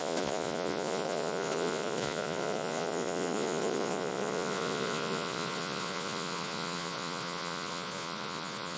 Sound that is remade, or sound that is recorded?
remade